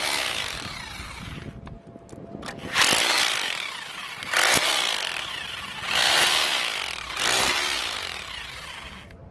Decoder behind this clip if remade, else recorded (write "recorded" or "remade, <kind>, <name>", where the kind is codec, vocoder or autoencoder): recorded